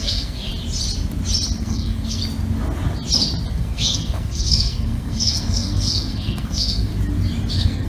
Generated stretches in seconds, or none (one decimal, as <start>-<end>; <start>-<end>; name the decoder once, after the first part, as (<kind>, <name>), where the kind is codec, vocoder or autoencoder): 0.0-0.5 (codec, SNAC); 1.6-2.2; 3.5-6.9; 7.5-7.9